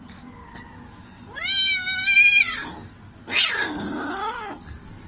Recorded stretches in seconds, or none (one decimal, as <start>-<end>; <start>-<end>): 0.0-5.1